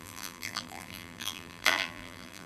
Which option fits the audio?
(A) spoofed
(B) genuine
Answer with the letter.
A